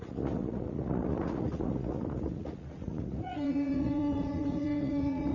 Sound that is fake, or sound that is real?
fake